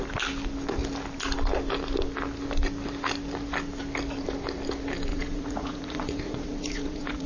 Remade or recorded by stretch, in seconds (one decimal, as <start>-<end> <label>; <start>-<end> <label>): 0.0-5.1 recorded; 5.1-7.3 remade